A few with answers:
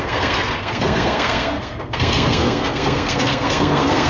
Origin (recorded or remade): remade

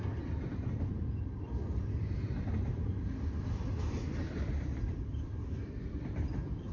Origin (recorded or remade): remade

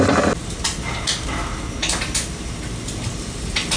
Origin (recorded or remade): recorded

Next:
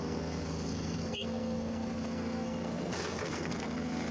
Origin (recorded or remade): remade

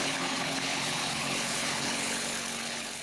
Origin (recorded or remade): remade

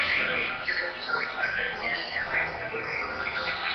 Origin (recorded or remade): remade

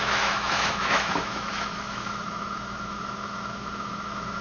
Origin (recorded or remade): remade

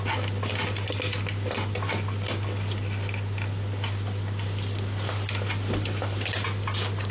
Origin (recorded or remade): recorded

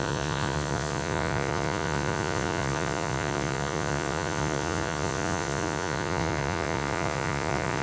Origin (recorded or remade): remade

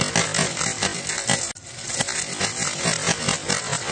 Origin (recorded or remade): recorded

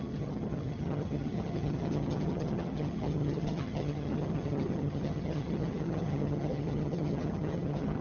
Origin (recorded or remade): remade